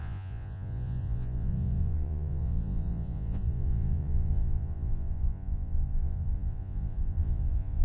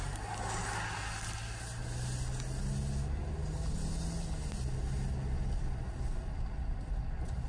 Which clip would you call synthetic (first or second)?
first